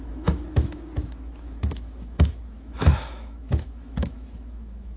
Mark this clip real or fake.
fake